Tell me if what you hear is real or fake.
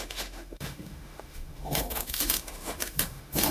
fake